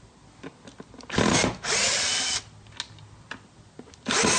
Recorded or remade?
recorded